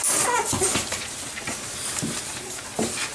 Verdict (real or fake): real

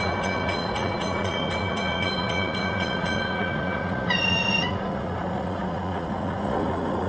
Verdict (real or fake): fake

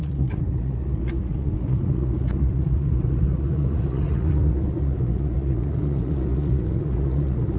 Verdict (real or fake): fake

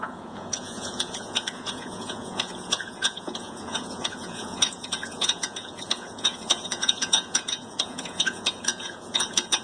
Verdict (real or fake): fake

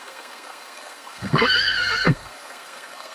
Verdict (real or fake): fake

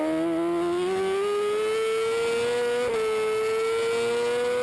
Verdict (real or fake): real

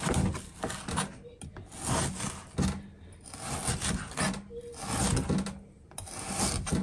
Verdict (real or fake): real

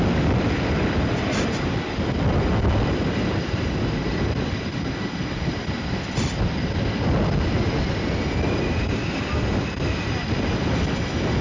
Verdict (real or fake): fake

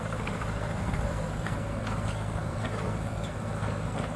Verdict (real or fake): fake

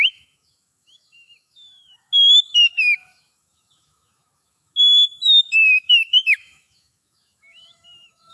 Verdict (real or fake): fake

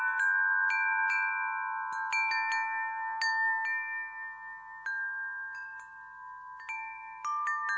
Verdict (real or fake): real